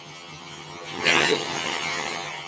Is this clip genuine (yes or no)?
no